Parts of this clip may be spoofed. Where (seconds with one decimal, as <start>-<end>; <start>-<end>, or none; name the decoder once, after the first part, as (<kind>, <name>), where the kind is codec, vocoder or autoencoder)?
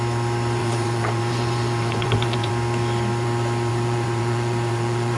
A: 0.6-2.5 (vocoder, Vocos); 3.7-5.2